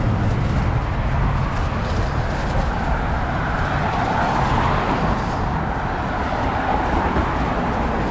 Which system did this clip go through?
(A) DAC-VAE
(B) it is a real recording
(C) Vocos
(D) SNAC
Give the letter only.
B